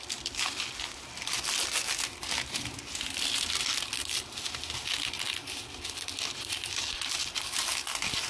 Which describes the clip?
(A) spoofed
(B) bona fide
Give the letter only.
B